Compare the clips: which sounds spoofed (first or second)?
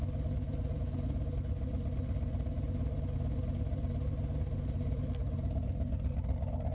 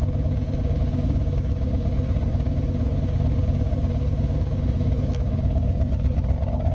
second